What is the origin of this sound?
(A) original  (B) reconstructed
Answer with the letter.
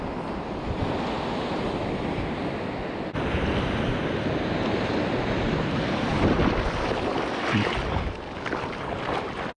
A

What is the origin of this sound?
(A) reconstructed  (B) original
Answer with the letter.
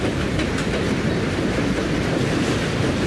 B